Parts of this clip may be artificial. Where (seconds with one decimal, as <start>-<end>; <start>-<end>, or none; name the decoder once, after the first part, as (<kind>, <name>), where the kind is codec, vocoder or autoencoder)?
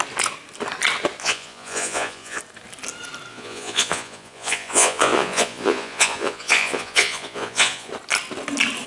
1.2-2.4 (vocoder, Vocos); 3.3-7.9